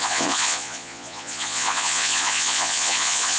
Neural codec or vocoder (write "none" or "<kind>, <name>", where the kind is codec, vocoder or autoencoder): vocoder, Vocos